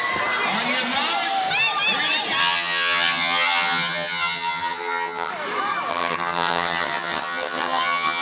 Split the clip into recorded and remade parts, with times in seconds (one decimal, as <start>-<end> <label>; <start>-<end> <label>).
0.0-2.4 recorded; 2.4-5.3 remade; 5.3-5.9 recorded; 5.9-8.2 remade